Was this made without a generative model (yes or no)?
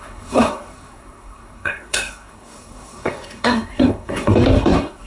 no